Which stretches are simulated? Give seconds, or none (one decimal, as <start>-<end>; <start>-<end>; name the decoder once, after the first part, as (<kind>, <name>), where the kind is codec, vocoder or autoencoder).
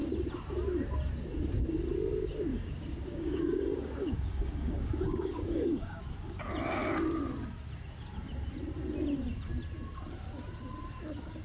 2.5-6.0 (codec, DAC)